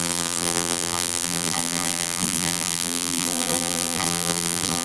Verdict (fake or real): fake